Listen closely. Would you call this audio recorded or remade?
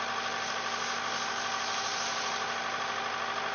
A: recorded